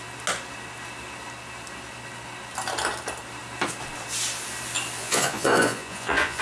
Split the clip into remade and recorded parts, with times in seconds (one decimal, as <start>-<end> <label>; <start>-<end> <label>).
0.0-5.0 recorded; 5.0-6.4 remade